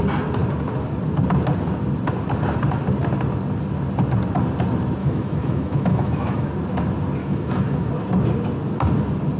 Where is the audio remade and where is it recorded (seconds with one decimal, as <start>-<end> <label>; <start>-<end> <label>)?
0.0-5.0 recorded; 5.0-6.5 remade; 6.5-7.2 recorded; 7.2-7.9 remade; 7.9-9.4 recorded